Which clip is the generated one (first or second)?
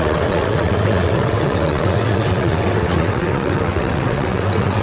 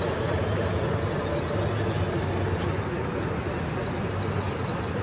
first